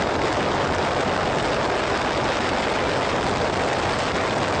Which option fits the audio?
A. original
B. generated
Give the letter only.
A